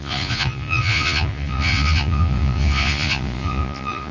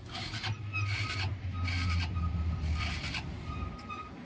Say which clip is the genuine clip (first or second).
second